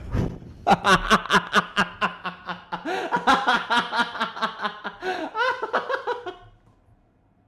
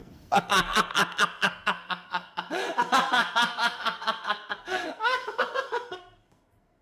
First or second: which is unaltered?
first